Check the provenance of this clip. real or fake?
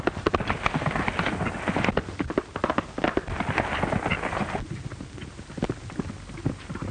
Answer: real